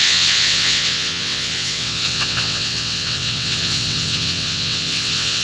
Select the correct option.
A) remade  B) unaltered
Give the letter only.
A